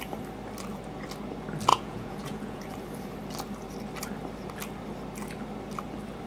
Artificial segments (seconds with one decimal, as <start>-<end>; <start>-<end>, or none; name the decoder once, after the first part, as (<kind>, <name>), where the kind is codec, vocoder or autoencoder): 1.7-2.6 (vocoder, Vocos)